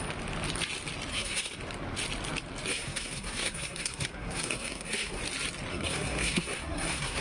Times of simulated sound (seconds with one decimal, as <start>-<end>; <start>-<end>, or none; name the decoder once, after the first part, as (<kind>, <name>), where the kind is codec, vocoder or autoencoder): 1.1-1.6 (codec, SNAC); 2.7-5.2; 5.7-7.2